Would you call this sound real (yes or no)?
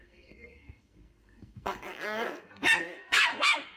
no